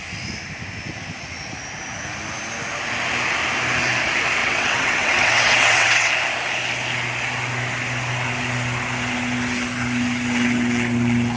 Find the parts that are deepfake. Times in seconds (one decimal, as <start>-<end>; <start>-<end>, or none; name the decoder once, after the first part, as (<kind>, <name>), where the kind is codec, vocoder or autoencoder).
4.4-6.1 (vocoder, WaveNeXt)